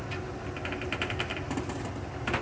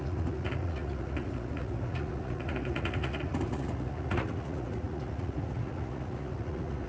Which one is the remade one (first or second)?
second